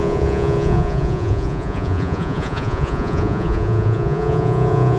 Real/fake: fake